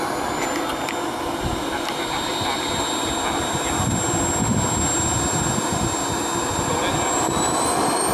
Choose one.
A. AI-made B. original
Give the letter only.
B